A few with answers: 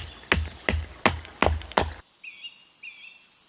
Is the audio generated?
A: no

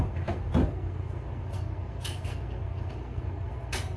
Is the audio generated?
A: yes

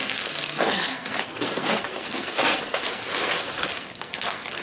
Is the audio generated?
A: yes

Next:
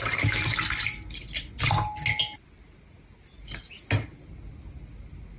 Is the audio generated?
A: no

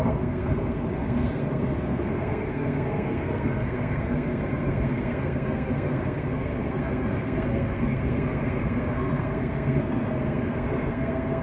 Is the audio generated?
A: yes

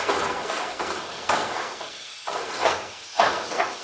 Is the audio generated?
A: yes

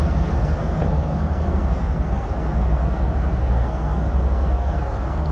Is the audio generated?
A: yes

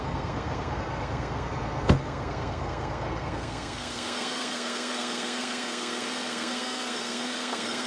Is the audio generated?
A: yes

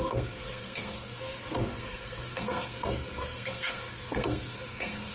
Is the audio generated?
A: yes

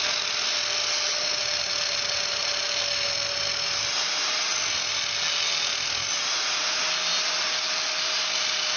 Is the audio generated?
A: no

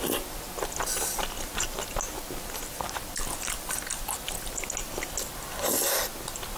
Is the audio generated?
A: no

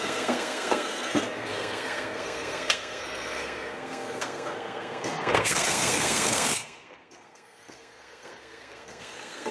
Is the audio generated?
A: yes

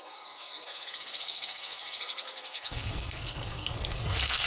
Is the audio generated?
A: yes